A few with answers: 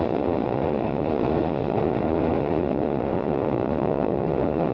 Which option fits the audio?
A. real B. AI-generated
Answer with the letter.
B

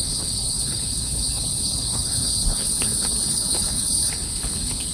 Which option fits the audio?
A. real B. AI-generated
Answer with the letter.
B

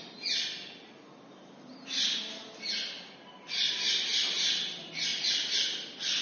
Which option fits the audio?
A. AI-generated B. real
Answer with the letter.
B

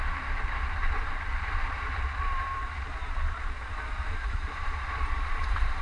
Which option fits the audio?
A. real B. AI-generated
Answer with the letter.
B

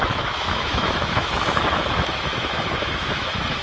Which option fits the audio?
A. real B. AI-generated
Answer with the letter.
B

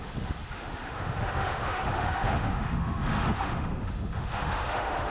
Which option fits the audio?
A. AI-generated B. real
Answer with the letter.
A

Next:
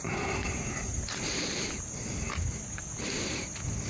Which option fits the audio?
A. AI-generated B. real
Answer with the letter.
B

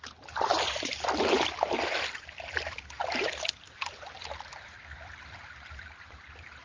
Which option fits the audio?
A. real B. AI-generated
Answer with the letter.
A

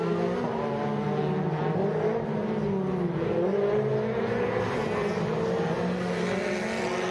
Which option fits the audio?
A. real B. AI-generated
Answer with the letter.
A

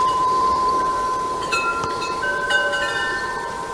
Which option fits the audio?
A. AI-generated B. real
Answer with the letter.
A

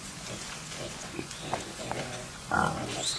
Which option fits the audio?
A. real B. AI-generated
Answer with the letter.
B